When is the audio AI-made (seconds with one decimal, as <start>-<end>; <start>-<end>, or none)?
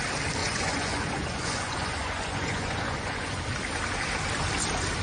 0.4-3.4